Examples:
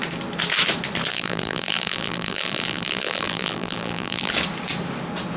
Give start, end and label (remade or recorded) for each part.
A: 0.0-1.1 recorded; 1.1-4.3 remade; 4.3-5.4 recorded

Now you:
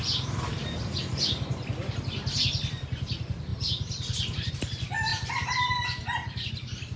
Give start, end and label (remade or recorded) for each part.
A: 0.0-0.6 recorded; 0.6-1.1 remade; 1.1-3.5 recorded; 3.5-4.5 remade; 4.5-5.1 recorded; 5.1-6.5 remade; 6.5-7.0 recorded

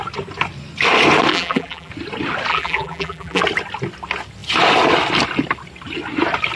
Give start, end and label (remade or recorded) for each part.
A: 0.0-1.3 recorded; 1.3-1.9 remade; 1.9-2.5 recorded; 2.5-3.4 remade; 3.4-6.6 recorded

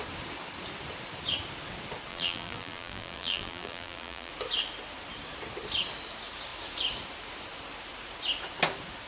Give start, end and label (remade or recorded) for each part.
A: 0.0-2.1 recorded; 2.1-4.3 remade; 4.3-9.1 recorded